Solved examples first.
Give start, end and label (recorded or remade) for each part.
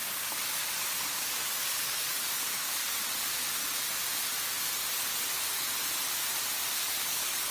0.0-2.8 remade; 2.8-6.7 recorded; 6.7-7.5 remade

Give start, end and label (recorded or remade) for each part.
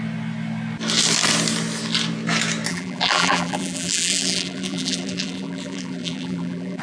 0.0-2.7 recorded; 2.7-6.8 remade